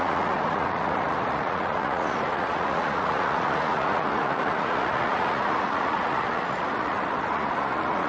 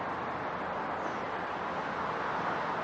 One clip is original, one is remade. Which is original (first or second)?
second